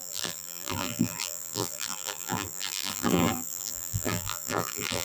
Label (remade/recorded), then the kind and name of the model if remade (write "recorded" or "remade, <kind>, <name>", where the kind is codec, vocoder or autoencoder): remade, vocoder, BigVGAN v2